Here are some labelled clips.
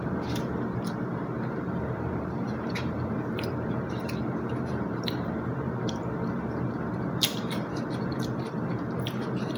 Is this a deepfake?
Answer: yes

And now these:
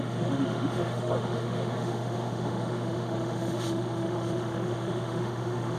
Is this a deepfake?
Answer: yes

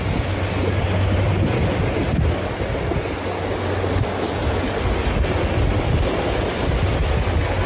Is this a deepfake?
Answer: no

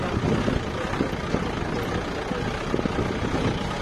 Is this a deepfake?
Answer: no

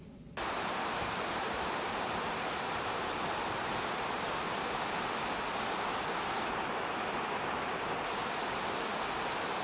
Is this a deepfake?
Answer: no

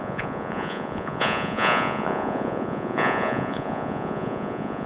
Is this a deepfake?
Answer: yes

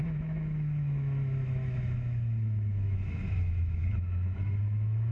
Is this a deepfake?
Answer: yes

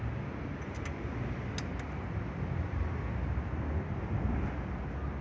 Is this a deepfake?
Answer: no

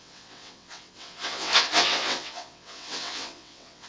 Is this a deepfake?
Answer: yes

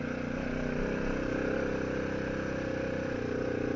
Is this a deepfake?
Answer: no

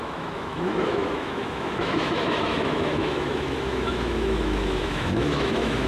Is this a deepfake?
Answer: yes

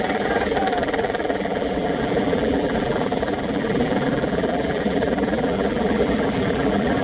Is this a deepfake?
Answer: yes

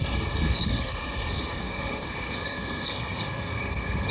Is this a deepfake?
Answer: yes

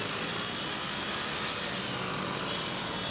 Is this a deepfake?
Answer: no